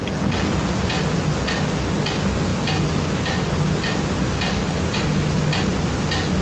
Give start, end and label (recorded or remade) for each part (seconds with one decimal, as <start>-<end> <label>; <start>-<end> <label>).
0.0-6.4 recorded